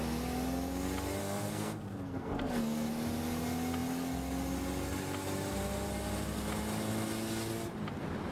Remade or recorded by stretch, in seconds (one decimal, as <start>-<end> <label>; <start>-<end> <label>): 0.0-1.2 recorded; 1.2-2.9 remade; 2.9-8.3 recorded